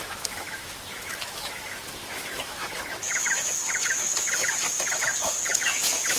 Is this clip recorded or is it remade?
remade